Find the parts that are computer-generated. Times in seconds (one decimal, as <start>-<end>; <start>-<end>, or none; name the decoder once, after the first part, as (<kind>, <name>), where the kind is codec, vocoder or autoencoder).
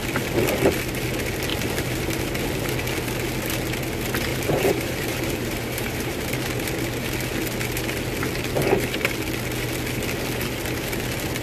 4.3-6.4 (vocoder, BigVGAN v2)